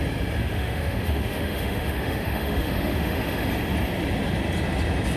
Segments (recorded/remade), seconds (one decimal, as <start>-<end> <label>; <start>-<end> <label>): 0.0-0.4 recorded; 0.4-3.5 remade; 3.5-5.2 recorded